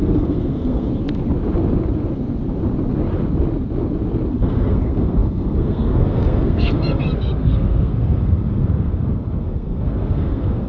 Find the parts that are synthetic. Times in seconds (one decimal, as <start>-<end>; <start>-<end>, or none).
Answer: 0.0-0.9; 4.3-10.7